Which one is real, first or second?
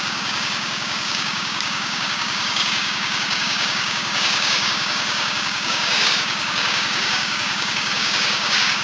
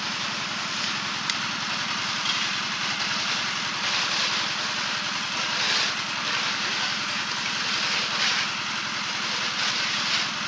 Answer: second